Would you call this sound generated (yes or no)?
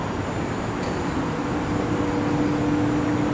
no